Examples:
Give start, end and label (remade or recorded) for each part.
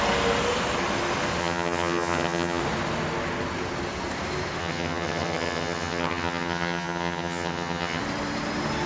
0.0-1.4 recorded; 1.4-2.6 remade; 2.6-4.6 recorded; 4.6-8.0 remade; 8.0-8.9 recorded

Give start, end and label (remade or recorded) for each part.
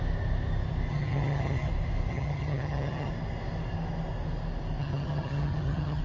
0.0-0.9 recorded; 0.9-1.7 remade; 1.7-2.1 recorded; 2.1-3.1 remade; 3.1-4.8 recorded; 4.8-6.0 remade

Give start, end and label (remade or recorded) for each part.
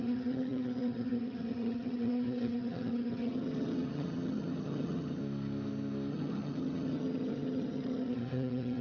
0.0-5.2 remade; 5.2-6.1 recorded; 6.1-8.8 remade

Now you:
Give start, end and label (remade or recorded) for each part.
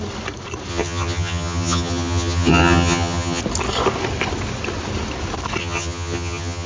0.0-0.7 recorded; 0.7-3.4 remade; 3.4-5.6 recorded; 5.6-6.7 remade